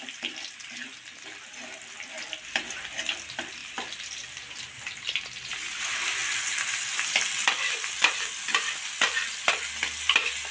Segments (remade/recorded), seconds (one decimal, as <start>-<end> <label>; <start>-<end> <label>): 0.0-10.5 recorded

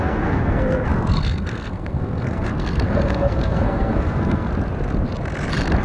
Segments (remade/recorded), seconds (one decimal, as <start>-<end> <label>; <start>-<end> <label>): 0.0-4.5 remade; 4.5-5.8 recorded

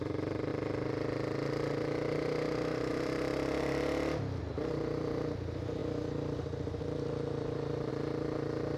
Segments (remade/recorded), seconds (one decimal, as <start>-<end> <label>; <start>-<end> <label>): 0.0-0.5 remade; 0.5-2.9 recorded; 2.9-3.3 remade; 3.3-4.4 recorded; 4.4-8.8 remade

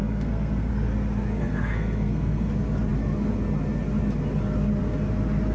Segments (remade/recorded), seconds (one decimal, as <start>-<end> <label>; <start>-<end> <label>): 0.0-0.7 remade; 0.7-1.4 recorded; 1.4-2.5 remade; 2.5-5.5 recorded

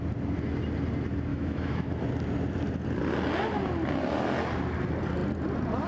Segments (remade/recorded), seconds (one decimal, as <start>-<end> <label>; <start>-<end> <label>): 0.0-1.3 recorded; 1.3-1.9 remade; 1.9-5.9 recorded